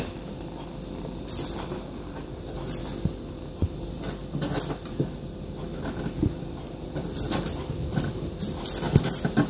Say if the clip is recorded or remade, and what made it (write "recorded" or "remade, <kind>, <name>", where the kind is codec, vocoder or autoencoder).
recorded